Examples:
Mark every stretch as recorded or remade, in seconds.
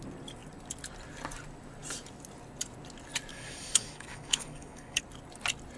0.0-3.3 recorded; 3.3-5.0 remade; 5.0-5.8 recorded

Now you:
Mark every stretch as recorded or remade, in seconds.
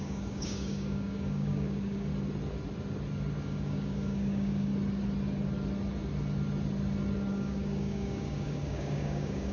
0.0-2.1 remade; 2.1-3.4 recorded; 3.4-4.7 remade; 4.7-7.3 recorded; 7.3-9.5 remade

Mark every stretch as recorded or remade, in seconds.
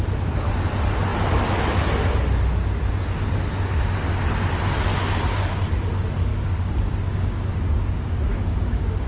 0.0-6.3 recorded; 6.3-9.1 remade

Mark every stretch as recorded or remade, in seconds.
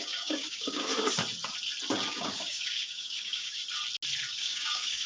0.0-0.9 remade; 0.9-2.1 recorded; 2.1-3.6 remade; 3.6-4.3 recorded; 4.3-5.1 remade